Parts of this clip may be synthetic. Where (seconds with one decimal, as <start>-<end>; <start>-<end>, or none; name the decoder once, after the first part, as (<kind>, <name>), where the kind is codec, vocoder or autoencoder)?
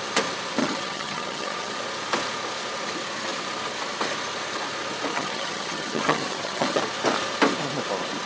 0.6-1.7 (vocoder, HiFi-GAN); 5.1-6.8